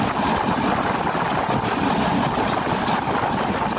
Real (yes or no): yes